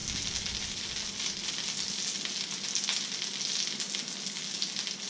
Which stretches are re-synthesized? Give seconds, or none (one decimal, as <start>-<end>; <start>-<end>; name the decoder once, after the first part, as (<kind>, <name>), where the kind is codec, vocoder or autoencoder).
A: none